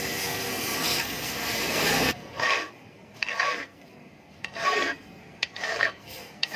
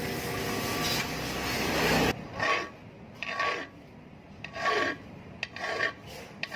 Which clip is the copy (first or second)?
first